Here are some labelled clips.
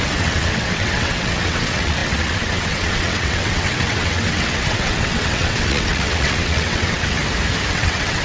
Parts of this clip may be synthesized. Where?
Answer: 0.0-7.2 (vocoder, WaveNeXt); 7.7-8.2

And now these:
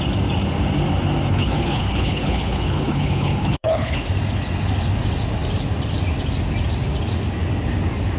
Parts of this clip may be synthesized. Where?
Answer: 1.3-4.1 (codec, HILCodec)